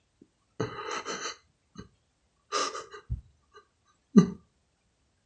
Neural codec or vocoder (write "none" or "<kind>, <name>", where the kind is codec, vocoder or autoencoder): none